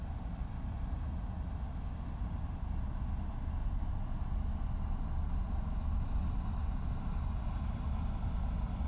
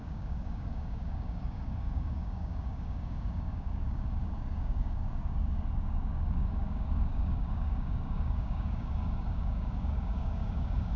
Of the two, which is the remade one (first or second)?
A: second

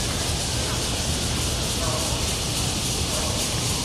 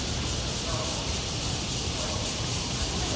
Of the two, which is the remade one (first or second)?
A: second